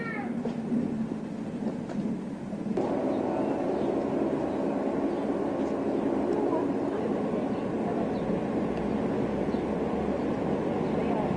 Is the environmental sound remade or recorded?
recorded